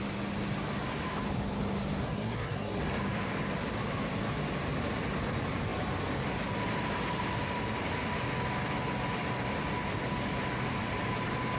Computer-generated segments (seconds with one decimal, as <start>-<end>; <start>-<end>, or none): 2.0-2.8